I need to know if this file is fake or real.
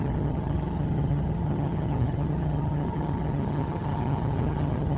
fake